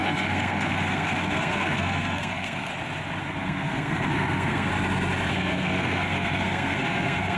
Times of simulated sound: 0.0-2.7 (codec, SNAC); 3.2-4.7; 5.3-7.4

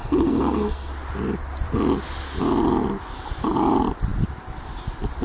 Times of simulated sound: 0.0-0.9 (codec, SNAC)

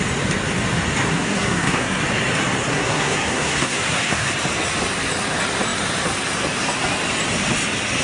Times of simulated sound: 1.1-2.0 (codec, SNAC); 2.7-4.3

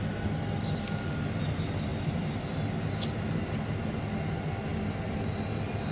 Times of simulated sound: none

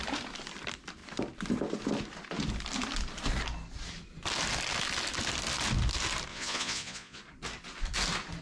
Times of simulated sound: 6.3-7.2 (vocoder, Vocos)

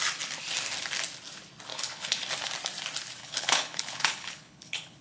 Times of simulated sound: 1.7-2.3 (codec, HILCodec); 3.2-5.0

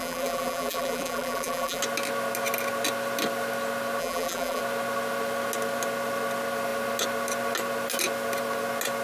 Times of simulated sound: 0.0-1.8 (vocoder, BigVGAN v2); 4.0-4.6